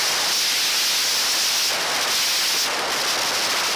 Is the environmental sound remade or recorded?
recorded